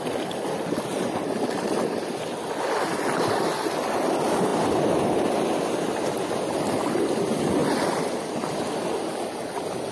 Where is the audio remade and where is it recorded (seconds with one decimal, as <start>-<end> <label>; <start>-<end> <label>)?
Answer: 0.0-9.9 recorded